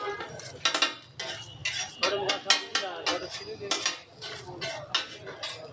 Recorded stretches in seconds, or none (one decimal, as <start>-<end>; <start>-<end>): 0.0-5.7